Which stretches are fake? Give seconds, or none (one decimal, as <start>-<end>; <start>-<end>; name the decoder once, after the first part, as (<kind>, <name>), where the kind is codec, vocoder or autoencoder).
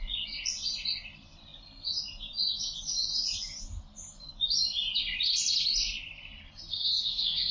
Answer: 6.7-7.5 (codec, SNAC)